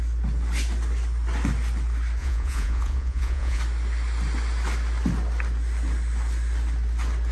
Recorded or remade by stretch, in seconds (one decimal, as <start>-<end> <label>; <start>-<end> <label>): 0.0-2.2 recorded; 2.2-3.6 remade; 3.6-7.3 recorded